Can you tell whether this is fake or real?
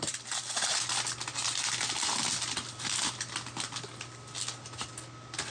real